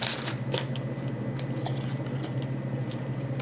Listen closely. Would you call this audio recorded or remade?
recorded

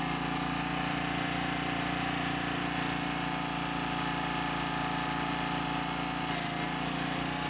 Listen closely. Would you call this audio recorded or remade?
recorded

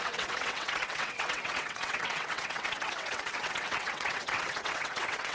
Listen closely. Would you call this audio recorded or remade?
remade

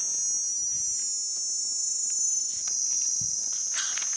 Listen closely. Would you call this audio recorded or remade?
recorded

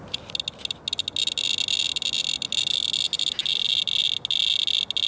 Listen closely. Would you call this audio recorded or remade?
recorded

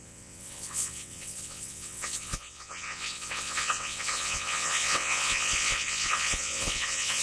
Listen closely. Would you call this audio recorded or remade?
remade